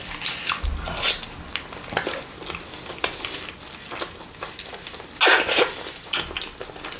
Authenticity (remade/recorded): recorded